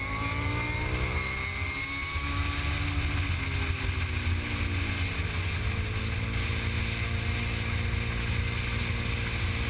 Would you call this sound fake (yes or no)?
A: no